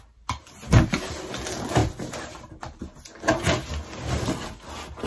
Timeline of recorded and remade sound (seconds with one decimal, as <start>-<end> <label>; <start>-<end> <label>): 0.0-1.8 recorded; 1.8-2.5 remade; 2.5-5.1 recorded